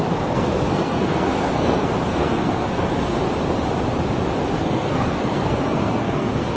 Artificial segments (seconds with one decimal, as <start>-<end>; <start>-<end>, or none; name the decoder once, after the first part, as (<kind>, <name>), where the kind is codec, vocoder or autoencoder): 0.0-3.2 (codec, SNAC); 4.5-6.6